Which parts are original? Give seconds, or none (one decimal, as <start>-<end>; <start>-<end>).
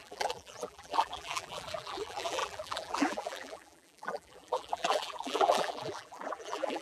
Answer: none